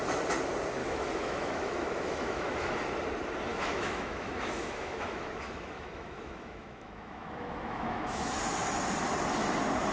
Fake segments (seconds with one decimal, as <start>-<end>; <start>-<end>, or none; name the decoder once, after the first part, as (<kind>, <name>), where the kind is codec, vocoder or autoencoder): 0.8-2.8 (autoencoder, DAC-VAE); 3.5-8.3